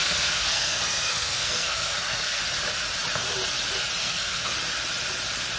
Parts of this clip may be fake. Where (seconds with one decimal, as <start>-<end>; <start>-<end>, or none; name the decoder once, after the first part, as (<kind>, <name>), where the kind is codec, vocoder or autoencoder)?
0.0-2.4 (codec, SNAC); 4.0-4.5